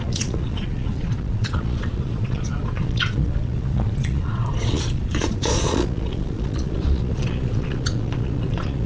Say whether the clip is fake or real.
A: fake